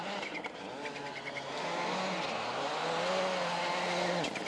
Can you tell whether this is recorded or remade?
recorded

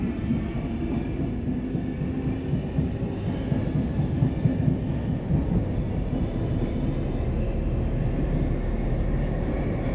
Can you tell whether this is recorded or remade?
recorded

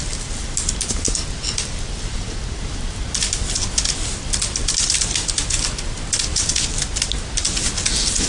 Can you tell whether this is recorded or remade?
recorded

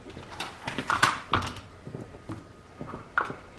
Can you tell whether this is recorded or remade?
recorded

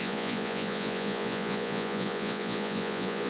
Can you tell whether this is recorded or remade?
remade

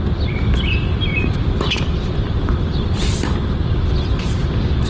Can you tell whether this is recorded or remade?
recorded